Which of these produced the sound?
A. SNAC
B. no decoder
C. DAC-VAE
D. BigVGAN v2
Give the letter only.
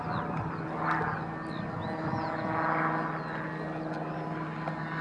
B